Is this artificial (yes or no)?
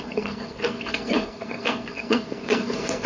yes